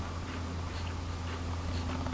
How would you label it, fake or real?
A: real